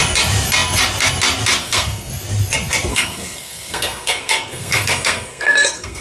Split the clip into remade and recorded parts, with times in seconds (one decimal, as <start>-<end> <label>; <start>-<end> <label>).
0.0-1.6 recorded; 1.6-2.1 remade; 2.1-2.9 recorded; 2.9-6.0 remade